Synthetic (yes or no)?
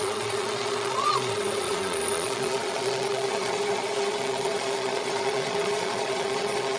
yes